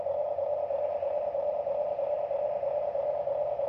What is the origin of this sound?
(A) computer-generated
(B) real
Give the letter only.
B